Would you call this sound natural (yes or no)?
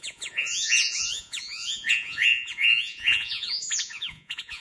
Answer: no